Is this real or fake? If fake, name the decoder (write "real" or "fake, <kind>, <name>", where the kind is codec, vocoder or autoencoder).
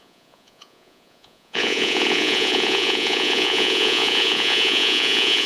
fake, vocoder, Vocos